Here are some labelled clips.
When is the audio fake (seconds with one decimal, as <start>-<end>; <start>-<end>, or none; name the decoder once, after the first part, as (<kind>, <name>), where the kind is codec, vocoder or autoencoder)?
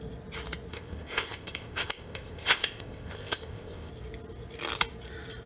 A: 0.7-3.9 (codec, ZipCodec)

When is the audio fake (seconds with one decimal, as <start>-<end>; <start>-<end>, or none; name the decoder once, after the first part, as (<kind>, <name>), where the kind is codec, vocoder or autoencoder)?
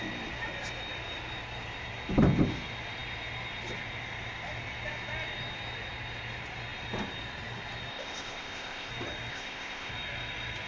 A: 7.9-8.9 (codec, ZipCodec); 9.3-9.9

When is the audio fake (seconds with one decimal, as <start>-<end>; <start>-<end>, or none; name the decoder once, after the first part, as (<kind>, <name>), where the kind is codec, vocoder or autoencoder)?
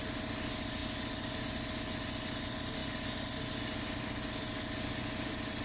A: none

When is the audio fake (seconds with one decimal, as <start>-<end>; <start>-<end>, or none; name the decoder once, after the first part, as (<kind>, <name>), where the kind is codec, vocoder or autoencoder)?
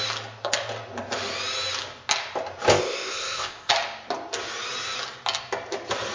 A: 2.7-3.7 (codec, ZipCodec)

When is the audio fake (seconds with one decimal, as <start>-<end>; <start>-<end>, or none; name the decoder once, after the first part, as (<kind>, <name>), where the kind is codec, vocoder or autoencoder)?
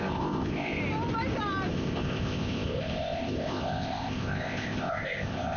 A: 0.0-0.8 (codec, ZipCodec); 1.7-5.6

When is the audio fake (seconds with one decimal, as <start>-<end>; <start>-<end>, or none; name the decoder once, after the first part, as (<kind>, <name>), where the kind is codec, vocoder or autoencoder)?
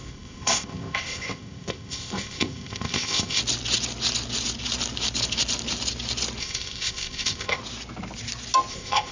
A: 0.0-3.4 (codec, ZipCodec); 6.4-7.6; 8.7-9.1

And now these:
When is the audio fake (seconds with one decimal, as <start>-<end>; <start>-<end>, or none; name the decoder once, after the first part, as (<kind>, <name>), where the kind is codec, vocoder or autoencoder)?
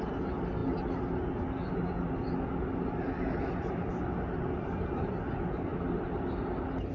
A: none